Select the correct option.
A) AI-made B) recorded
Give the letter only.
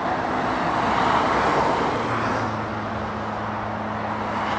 B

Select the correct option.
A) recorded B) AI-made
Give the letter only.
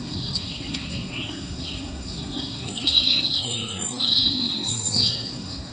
B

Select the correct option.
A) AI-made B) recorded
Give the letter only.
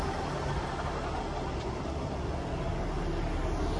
B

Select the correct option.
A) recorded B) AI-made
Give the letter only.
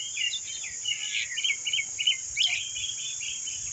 A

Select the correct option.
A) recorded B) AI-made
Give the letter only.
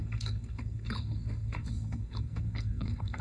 B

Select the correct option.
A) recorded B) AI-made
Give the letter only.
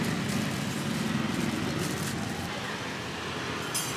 A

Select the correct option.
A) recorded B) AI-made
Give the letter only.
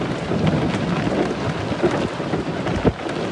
A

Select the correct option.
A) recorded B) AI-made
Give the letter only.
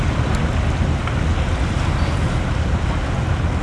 A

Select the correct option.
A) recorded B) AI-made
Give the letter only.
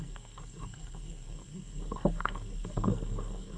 B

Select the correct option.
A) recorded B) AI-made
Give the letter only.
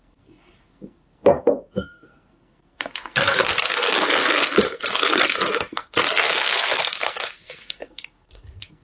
B